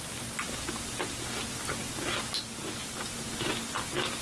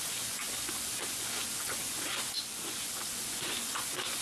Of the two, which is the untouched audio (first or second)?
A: first